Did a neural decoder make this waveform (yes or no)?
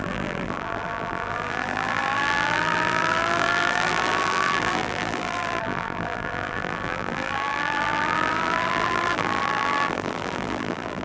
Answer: yes